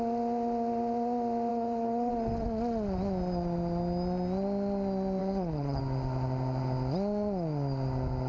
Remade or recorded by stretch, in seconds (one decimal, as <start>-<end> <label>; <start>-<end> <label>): 0.0-1.5 recorded; 1.5-2.1 remade; 2.1-5.2 recorded; 5.2-5.8 remade; 5.8-8.3 recorded